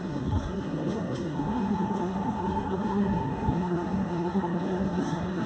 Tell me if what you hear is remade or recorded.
remade